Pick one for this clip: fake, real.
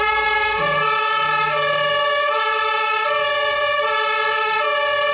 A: fake